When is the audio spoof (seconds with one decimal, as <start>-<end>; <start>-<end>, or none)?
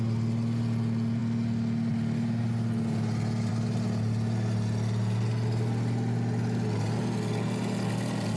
none